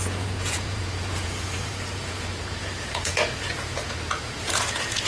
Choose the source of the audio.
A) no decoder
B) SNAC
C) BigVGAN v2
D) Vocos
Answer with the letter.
D